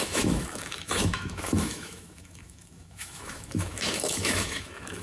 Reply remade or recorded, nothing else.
remade